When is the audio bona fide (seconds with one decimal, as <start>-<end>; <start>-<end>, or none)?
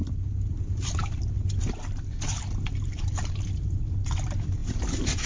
0.0-4.6